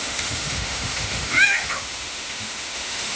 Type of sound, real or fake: fake